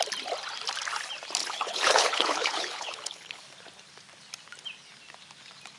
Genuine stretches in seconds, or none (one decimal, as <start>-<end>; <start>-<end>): 0.0-1.4; 3.4-5.8